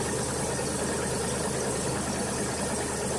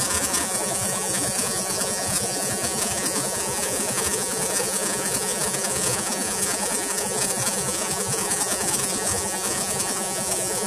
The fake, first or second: second